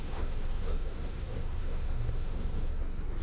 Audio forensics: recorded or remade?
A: remade